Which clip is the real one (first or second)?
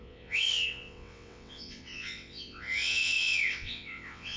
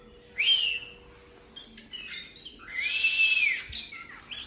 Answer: second